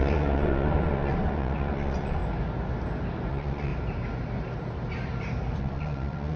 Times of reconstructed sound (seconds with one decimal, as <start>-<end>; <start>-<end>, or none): 0.0-2.2; 3.3-3.7; 5.6-6.4